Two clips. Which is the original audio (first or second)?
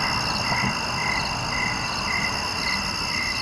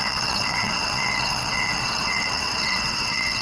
first